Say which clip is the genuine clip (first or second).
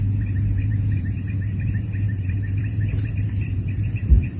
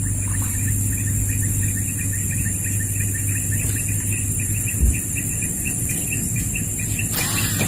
second